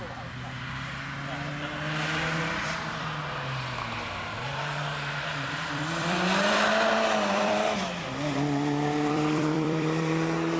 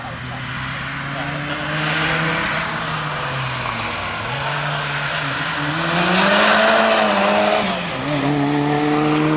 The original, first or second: second